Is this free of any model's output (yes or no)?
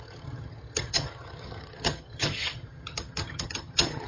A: no